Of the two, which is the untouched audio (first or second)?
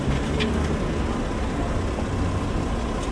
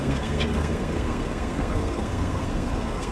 first